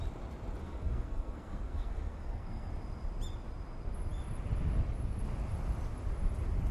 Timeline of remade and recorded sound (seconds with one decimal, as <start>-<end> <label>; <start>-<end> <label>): 0.0-0.6 recorded; 0.6-2.7 remade; 2.7-6.7 recorded